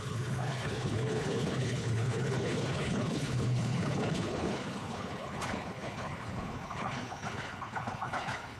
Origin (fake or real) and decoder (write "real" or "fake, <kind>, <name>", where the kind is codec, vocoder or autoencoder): fake, codec, HILCodec